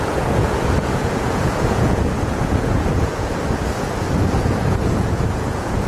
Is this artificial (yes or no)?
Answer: yes